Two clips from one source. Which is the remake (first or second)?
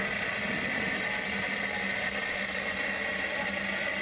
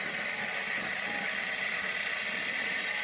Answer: second